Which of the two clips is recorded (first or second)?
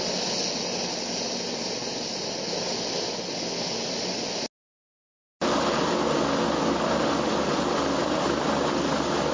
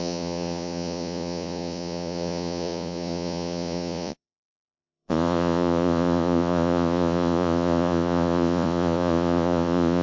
first